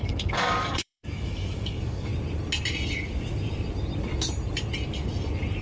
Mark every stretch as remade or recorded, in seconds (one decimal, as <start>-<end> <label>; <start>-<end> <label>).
0.0-2.1 remade; 2.1-5.6 recorded